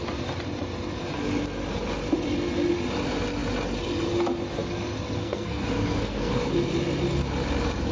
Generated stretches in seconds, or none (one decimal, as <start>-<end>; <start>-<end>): 5.2-6.5